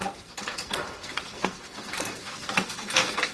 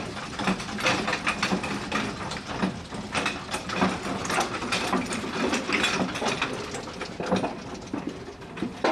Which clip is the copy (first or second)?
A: first